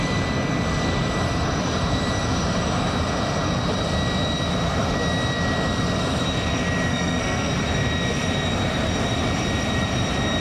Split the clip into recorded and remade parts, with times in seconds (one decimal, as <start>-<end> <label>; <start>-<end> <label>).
0.0-6.9 recorded; 6.9-7.5 remade; 7.5-10.4 recorded